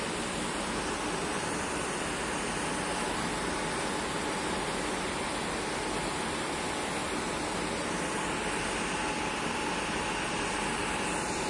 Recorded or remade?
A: recorded